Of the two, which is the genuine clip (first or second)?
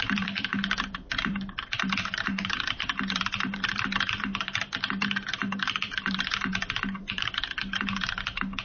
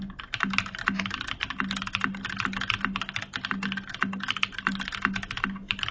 second